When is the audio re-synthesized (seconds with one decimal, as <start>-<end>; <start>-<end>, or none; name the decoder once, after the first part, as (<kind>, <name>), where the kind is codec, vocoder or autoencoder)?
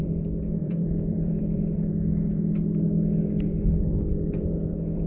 0.6-1.4 (vocoder, BigVGAN v2)